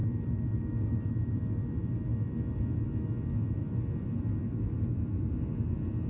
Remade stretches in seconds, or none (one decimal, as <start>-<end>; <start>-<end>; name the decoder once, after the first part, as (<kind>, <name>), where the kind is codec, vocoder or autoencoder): none